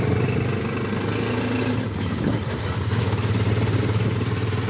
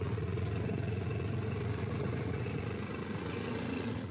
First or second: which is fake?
second